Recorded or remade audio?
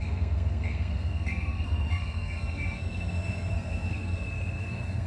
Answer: remade